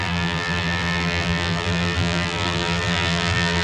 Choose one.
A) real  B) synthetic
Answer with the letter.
B